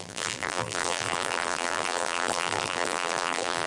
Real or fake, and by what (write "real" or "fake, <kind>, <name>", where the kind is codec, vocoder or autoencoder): fake, vocoder, BigVGAN v2